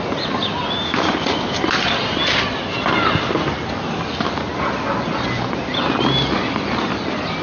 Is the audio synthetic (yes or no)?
no